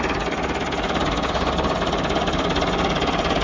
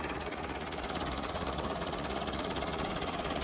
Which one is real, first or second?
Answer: first